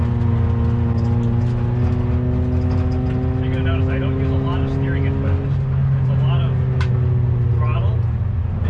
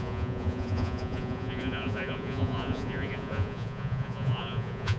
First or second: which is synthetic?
second